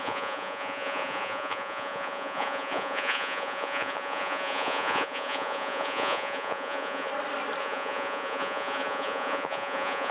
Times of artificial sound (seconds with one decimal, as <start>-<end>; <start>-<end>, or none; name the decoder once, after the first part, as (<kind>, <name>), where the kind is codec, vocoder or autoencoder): 0.0-7.1 (vocoder, Vocos); 7.6-10.1